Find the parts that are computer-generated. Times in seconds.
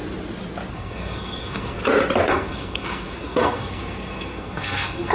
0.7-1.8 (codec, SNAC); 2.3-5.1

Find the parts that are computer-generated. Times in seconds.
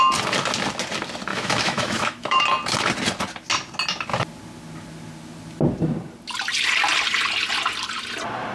1.3-2.4 (autoencoder, DAC-VAE)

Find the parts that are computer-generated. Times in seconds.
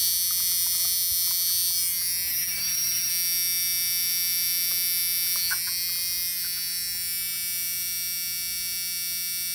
2.3-3.1 (autoencoder, DAC-VAE)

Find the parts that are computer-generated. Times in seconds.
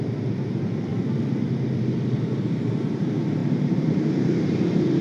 0.0-0.9 (vocoder, BigVGAN v2); 2.2-5.0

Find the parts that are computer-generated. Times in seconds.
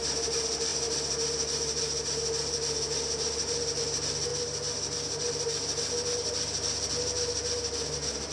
none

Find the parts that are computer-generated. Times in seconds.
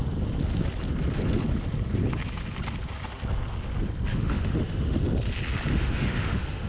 4.1-5.0 (autoencoder, DAC-VAE); 5.7-6.7